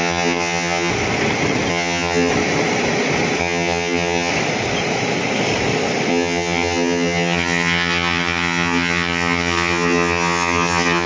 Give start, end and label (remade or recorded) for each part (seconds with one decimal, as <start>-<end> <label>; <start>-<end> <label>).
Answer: 0.0-0.9 remade; 0.9-1.7 recorded; 1.7-2.3 remade; 2.3-3.4 recorded; 3.4-4.3 remade; 4.3-6.1 recorded; 6.1-11.1 remade